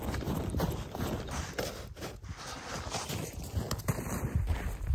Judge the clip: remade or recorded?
recorded